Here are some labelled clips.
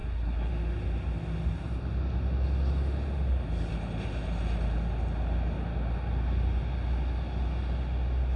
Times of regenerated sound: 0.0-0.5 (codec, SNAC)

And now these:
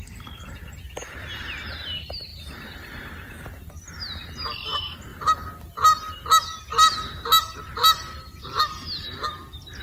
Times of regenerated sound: 2.3-3.7 (vocoder, BigVGAN v2); 5.1-6.3